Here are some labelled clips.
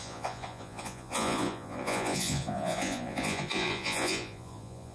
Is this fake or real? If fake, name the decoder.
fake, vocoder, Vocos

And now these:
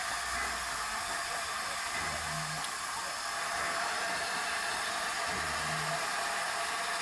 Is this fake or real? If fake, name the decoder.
real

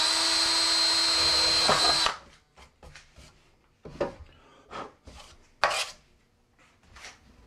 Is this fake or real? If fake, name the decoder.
real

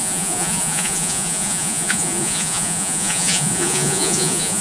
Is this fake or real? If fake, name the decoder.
fake, vocoder, Vocos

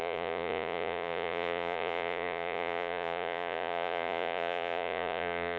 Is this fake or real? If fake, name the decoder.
fake, vocoder, Vocos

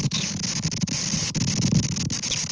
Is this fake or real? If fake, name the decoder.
real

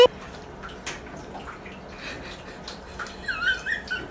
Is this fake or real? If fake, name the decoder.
real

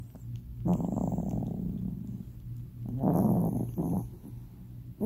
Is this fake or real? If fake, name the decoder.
real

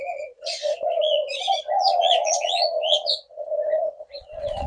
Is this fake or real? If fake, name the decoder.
fake, vocoder, Vocos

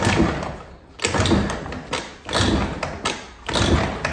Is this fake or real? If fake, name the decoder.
real